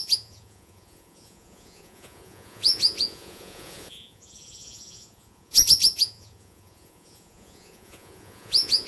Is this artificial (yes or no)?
yes